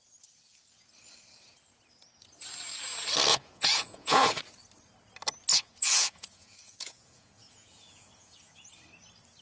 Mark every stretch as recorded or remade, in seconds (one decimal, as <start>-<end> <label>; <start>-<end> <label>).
0.0-3.3 recorded; 3.3-4.4 remade; 4.4-5.5 recorded; 5.5-8.7 remade; 8.7-9.4 recorded